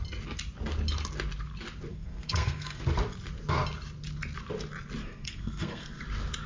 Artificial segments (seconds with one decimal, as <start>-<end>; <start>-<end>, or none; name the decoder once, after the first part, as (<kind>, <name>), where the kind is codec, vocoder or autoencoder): 1.9-2.8 (codec, SNAC); 5.0-6.0